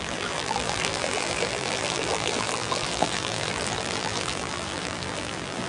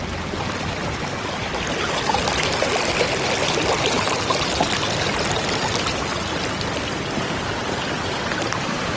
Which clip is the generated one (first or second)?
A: first